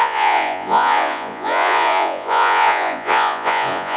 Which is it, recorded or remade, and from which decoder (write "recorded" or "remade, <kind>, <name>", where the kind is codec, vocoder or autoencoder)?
remade, vocoder, Vocos